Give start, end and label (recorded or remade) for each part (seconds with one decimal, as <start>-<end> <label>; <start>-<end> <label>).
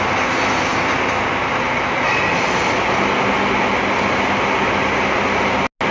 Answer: 0.0-5.9 recorded